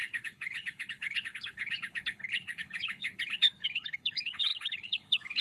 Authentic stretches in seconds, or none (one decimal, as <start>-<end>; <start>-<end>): none